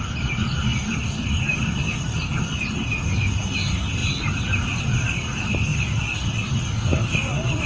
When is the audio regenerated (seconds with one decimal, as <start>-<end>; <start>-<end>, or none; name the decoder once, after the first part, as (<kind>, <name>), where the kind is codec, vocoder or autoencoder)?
none